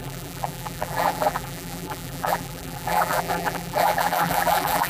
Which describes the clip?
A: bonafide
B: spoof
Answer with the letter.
B